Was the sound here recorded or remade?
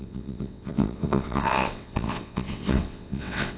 remade